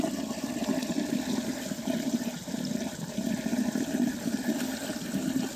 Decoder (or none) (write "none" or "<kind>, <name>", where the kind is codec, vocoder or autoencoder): none